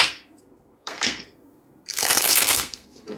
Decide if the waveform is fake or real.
fake